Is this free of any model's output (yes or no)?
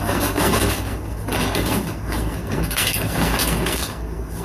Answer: no